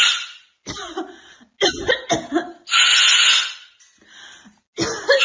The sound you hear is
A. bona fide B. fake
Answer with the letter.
A